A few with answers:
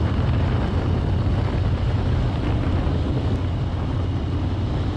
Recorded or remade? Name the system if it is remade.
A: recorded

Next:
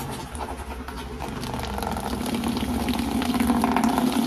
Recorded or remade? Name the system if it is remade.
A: recorded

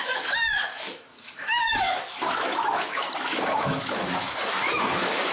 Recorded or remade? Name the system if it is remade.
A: remade, autoencoder, DAC-VAE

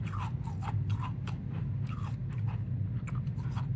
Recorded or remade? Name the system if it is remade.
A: recorded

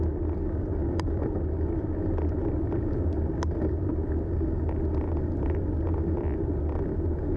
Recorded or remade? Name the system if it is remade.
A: recorded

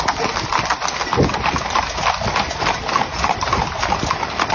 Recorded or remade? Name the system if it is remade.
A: recorded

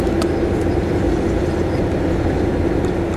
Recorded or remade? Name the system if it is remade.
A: recorded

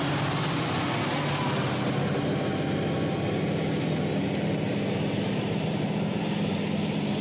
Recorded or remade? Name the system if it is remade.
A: recorded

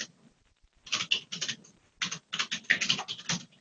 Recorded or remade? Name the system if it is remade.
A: recorded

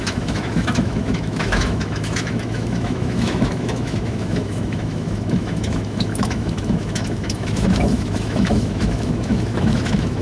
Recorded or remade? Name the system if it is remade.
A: remade, autoencoder, DAC-VAE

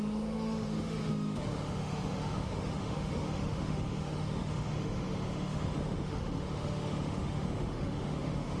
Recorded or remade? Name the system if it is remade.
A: remade, autoencoder, DAC-VAE